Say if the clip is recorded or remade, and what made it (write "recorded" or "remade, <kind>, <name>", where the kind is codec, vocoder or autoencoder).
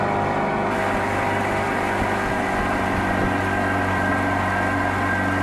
recorded